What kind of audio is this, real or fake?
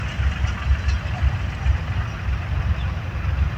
real